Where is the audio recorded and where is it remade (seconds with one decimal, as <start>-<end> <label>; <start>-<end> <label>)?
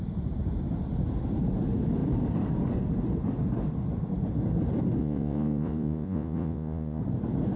0.0-5.0 recorded; 5.0-7.0 remade; 7.0-7.6 recorded